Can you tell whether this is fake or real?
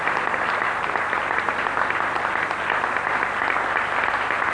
real